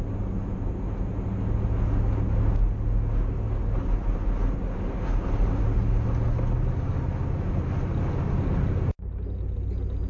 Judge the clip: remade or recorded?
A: recorded